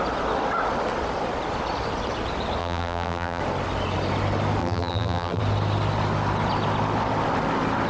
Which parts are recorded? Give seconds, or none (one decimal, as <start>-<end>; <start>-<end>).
0.0-2.6; 3.4-4.6; 5.4-7.9

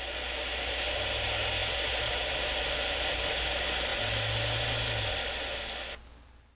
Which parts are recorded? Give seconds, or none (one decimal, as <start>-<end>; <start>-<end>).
0.0-6.6